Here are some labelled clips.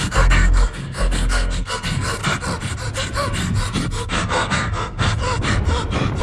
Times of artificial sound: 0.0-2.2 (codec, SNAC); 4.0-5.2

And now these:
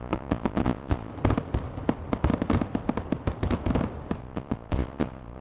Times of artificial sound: 0.0-1.1 (vocoder, Vocos); 4.2-5.4

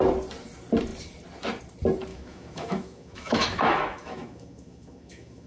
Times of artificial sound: 2.1-5.5 (autoencoder, DAC-VAE)